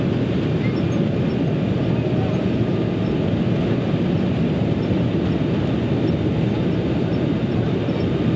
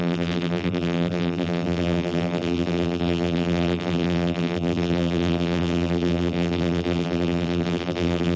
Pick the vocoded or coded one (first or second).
second